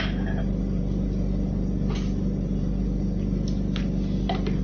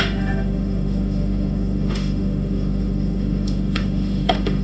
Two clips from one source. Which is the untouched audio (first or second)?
first